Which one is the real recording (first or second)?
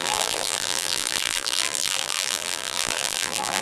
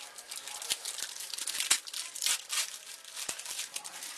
second